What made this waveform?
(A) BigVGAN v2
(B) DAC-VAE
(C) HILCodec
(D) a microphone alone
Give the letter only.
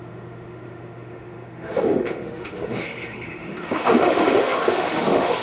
B